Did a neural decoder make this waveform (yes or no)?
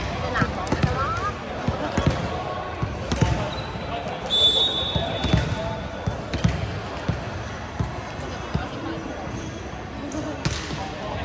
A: no